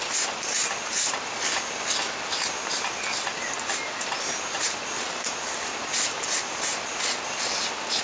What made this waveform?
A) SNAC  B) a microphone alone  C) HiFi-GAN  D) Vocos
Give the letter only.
B